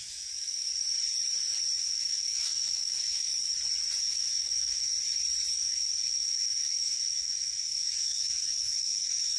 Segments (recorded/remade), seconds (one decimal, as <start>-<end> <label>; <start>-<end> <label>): 0.0-0.7 remade; 0.7-1.8 recorded; 1.8-3.3 remade; 3.3-4.1 recorded; 4.1-4.9 remade; 4.9-5.5 recorded; 5.5-9.4 remade